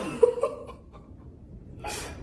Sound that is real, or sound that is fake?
real